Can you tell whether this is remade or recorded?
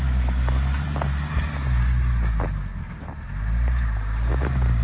recorded